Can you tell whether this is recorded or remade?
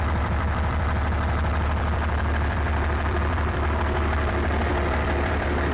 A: remade